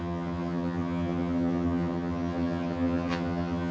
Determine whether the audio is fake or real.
fake